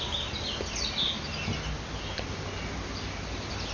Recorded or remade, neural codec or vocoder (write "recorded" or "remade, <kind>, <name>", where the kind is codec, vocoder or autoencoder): recorded